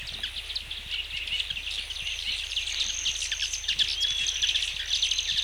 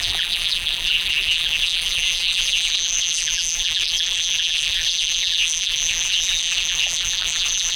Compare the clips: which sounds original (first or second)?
first